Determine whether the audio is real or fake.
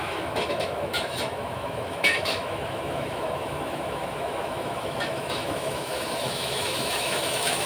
fake